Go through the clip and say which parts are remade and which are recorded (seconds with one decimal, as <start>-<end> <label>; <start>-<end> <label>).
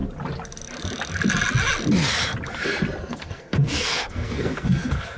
0.0-3.1 recorded; 3.1-5.2 remade